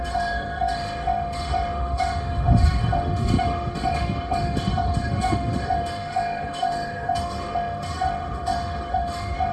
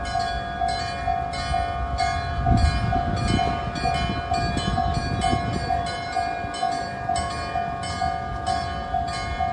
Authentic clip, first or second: second